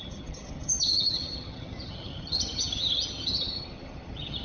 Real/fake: fake